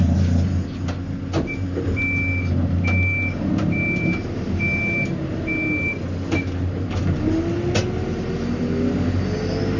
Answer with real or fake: real